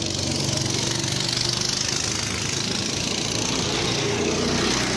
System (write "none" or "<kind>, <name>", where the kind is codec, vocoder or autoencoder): none